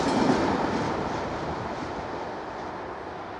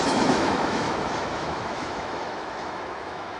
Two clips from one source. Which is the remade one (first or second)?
second